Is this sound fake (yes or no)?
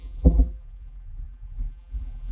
yes